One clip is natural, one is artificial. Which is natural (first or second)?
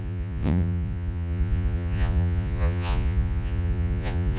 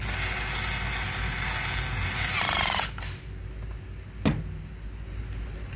second